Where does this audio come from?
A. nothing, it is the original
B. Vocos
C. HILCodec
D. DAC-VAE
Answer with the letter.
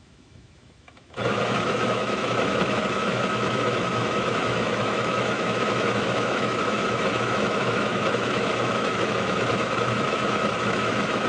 D